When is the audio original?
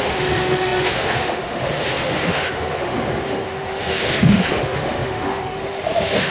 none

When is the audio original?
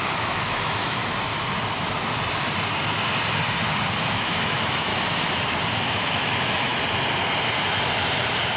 1.0-4.0; 4.9-5.8; 6.7-8.6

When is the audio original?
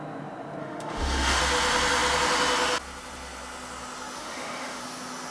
0.0-0.6; 1.4-4.2; 4.8-5.3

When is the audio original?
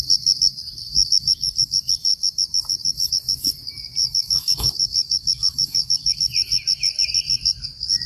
0.0-0.9; 1.5-4.0; 6.2-8.1